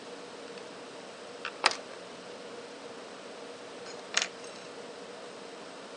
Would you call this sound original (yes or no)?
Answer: yes